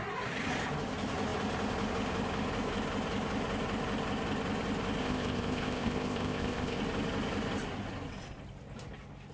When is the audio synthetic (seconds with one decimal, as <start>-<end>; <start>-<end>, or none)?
5.0-6.8